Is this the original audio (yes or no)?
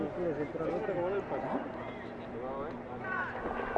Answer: yes